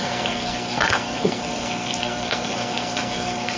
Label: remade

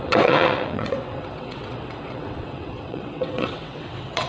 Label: remade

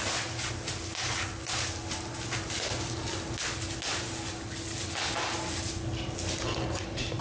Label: recorded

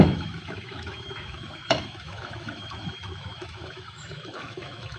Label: remade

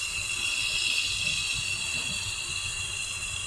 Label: recorded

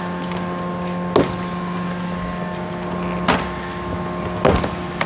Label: recorded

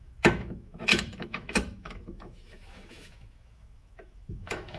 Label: remade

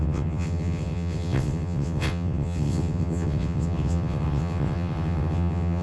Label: remade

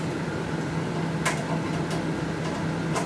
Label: recorded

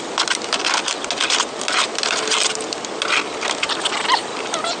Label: recorded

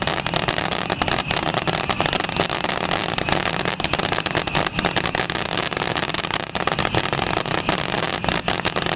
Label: recorded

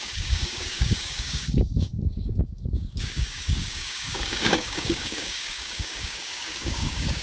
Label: remade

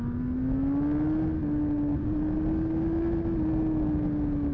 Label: recorded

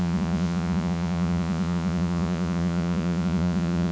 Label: remade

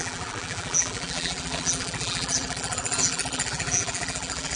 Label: remade